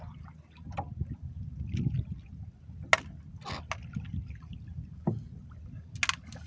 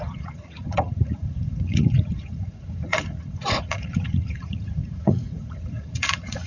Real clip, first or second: first